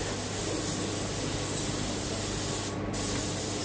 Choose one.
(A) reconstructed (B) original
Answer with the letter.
B